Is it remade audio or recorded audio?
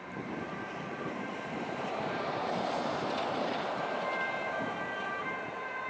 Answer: remade